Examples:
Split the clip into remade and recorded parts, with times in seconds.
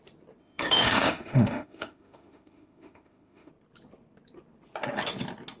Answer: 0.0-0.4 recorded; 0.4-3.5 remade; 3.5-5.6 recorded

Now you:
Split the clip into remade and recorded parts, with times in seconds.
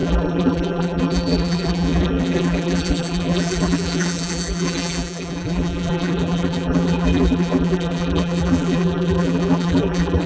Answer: 0.0-10.3 remade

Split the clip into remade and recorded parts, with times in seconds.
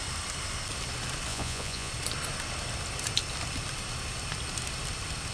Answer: 0.0-1.3 recorded; 1.3-1.9 remade; 1.9-5.3 recorded